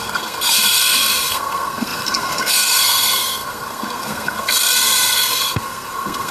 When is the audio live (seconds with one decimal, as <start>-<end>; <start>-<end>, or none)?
none